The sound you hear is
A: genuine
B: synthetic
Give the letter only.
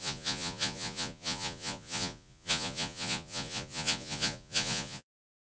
B